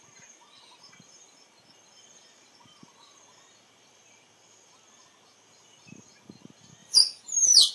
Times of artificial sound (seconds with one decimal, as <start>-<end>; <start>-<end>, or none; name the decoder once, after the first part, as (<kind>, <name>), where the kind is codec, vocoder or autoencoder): 6.8-7.7 (vocoder, BigVGAN v2)